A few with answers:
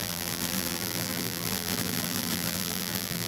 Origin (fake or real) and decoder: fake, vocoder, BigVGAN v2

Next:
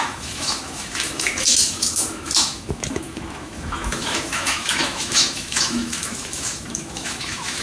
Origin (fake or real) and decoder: fake, autoencoder, DAC-VAE